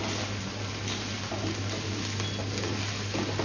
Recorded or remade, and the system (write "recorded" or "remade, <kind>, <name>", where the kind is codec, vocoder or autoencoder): recorded